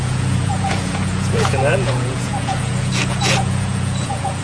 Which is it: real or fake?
fake